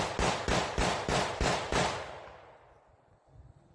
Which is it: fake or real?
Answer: real